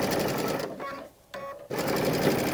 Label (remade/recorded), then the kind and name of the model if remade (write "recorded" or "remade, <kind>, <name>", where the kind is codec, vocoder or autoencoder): recorded